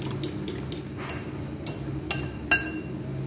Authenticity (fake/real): real